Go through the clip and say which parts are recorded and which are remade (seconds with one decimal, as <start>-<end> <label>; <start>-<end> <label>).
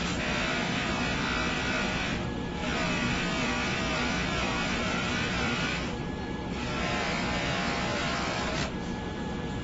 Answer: 0.0-2.6 remade; 2.6-4.0 recorded; 4.0-9.6 remade